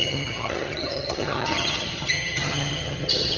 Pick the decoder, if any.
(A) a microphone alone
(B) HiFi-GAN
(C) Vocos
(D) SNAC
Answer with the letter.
B